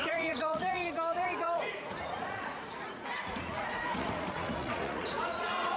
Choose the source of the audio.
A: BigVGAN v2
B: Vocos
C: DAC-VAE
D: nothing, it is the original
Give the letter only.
B